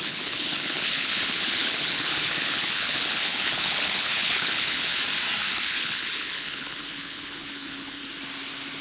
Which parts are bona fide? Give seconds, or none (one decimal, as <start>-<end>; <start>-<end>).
4.9-5.5; 8.0-8.8